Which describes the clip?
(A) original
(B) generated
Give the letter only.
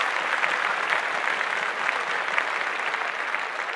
A